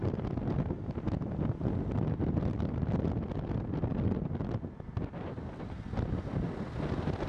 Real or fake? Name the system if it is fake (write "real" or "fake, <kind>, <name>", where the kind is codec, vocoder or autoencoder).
real